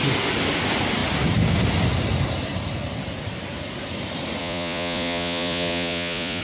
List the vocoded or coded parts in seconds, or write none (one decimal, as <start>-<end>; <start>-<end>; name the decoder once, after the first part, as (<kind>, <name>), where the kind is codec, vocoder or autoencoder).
4.4-6.4 (vocoder, Vocos)